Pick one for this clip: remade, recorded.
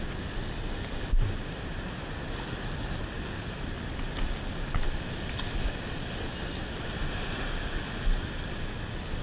recorded